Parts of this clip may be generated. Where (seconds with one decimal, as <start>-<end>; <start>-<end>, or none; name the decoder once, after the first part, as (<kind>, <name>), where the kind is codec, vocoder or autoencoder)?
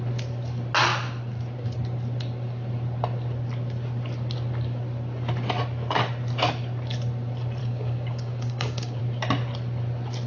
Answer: 7.6-9.0 (codec, DAC)